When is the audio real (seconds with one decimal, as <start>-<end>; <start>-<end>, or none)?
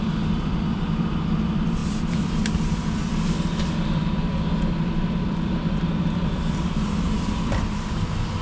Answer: none